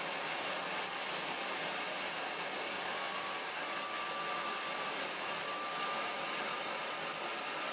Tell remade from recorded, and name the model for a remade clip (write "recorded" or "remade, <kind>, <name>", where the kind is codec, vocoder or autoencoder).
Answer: recorded